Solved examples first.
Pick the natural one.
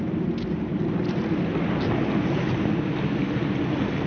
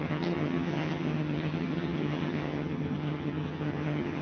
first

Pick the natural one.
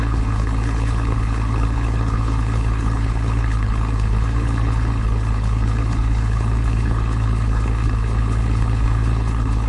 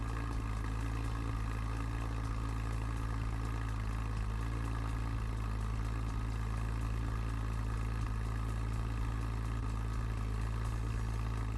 second